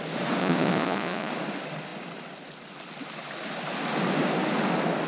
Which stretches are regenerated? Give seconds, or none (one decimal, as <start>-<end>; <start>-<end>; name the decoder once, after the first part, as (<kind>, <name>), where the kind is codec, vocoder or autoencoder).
0.4-1.3 (vocoder, Vocos)